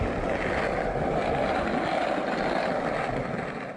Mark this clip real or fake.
real